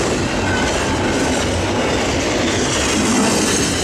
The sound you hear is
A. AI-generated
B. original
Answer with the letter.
B